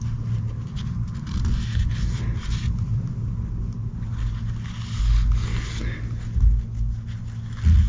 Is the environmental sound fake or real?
real